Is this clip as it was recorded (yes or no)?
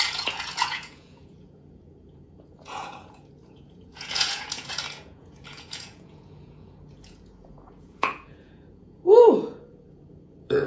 no